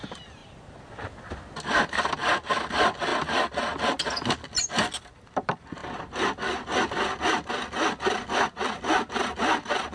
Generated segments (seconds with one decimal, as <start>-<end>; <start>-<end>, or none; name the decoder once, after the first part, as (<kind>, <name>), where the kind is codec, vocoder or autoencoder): none